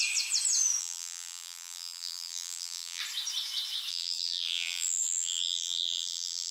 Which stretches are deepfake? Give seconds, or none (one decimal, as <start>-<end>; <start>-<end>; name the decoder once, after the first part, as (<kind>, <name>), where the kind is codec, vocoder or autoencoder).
0.8-3.0 (vocoder, BigVGAN v2); 3.9-6.5